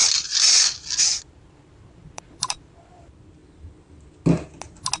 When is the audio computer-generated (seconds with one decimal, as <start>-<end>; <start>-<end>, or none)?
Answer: 0.0-3.4